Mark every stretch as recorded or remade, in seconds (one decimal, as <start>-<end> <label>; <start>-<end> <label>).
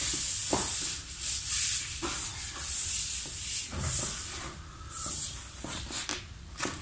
0.0-6.8 recorded